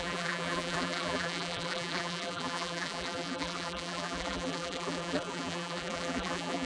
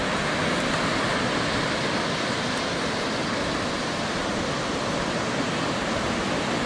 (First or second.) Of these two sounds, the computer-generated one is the first